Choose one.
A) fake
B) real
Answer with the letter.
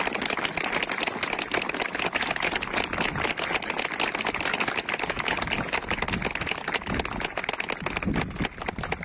B